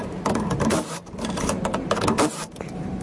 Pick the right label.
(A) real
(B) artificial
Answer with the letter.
B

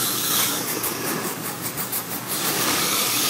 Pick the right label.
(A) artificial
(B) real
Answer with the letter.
A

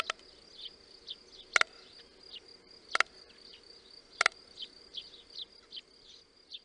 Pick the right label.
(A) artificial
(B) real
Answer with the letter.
B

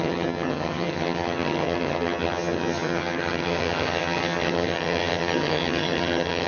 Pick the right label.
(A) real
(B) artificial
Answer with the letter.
B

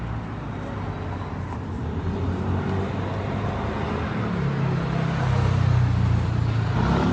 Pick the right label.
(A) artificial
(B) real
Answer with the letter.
B